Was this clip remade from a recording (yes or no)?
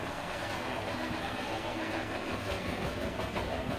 yes